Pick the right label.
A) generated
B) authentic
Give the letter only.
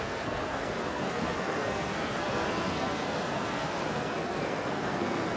A